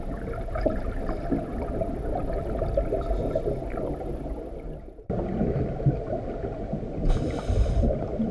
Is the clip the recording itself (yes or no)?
yes